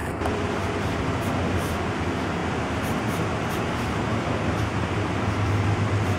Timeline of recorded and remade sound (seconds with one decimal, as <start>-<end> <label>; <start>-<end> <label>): 0.0-2.4 recorded; 2.4-3.5 remade; 3.5-4.1 recorded; 4.1-4.8 remade; 4.8-6.2 recorded

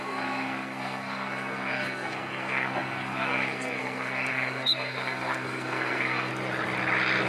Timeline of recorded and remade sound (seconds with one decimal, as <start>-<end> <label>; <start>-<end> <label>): 0.0-6.3 remade; 6.3-7.3 recorded

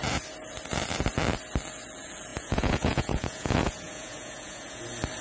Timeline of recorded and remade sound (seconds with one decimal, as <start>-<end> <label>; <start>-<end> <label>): 0.0-2.3 recorded; 2.3-4.8 remade; 4.8-5.2 recorded

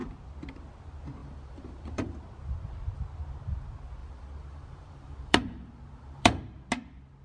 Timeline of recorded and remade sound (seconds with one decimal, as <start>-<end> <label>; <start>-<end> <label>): 0.0-1.2 recorded; 1.2-2.1 remade; 2.1-4.0 recorded; 4.0-6.4 remade; 6.4-7.2 recorded

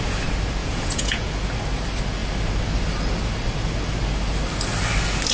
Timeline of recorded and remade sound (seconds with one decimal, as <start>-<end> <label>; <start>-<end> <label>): 0.0-0.6 recorded; 0.6-1.3 remade; 1.3-5.3 recorded

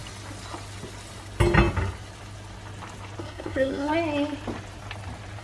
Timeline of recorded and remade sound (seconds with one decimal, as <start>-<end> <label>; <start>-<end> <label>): 0.0-3.2 recorded; 3.2-3.9 remade; 3.9-5.4 recorded

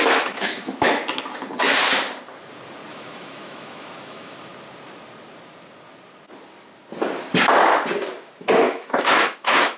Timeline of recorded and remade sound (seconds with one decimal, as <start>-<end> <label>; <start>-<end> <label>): 0.0-1.0 remade; 1.0-2.9 recorded; 2.9-4.5 remade; 4.5-8.7 recorded; 8.7-9.8 remade